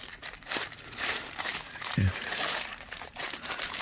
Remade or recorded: remade